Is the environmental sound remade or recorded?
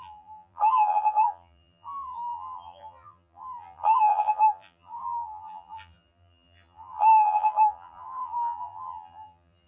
remade